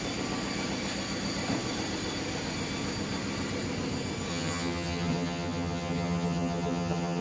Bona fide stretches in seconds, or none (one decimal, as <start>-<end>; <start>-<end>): 0.0-4.3